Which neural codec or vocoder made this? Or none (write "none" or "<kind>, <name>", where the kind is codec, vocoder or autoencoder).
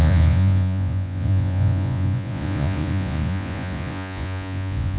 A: vocoder, Vocos